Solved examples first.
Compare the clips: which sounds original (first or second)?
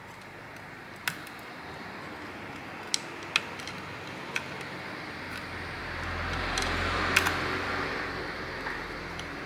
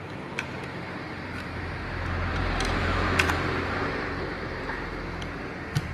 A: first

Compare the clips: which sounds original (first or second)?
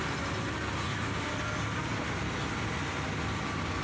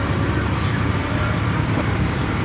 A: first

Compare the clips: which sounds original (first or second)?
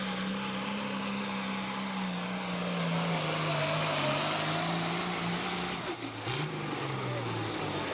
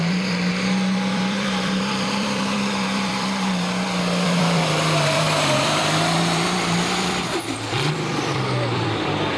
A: first